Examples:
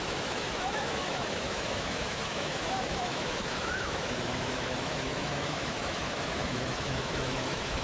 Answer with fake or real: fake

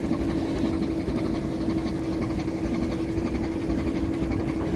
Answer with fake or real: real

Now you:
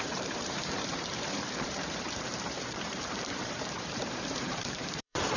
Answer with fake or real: fake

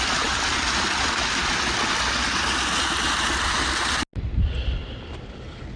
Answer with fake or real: real